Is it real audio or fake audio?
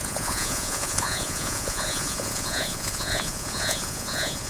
fake